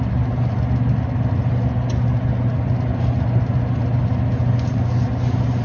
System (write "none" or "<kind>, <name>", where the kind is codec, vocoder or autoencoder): none